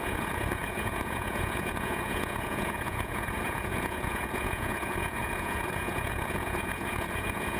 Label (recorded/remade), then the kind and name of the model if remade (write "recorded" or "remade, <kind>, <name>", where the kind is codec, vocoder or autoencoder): remade, vocoder, Vocos